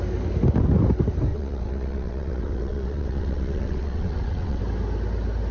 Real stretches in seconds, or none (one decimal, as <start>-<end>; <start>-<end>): 0.0-1.3; 4.6-5.5